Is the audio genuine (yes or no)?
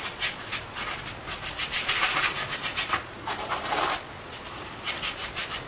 yes